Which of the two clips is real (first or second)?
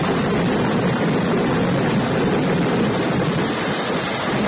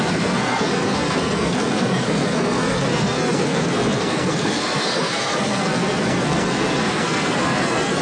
first